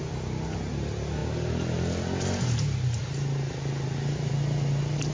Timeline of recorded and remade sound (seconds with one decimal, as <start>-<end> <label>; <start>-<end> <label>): 0.0-5.1 recorded